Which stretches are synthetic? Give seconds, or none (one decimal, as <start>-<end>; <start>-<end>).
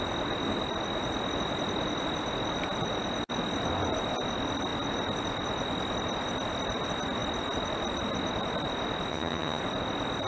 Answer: 9.1-9.6